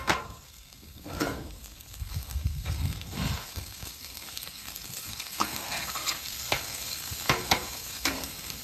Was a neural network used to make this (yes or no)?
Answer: yes